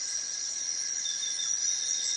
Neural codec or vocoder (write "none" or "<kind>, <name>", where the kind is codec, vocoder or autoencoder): none